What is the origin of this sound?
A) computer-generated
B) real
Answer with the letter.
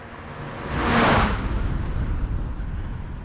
B